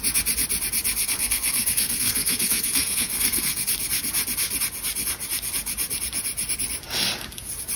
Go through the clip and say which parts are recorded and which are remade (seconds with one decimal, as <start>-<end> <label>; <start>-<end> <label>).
0.0-1.0 recorded; 1.0-3.7 remade; 3.7-7.8 recorded